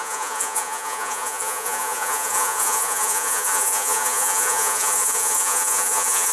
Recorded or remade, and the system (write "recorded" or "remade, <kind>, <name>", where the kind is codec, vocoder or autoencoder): remade, vocoder, Vocos